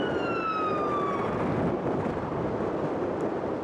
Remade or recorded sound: recorded